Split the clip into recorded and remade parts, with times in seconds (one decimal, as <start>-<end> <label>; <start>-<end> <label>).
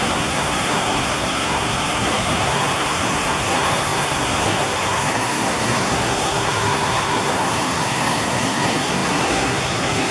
0.0-10.1 remade